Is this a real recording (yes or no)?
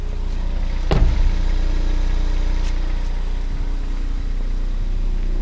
yes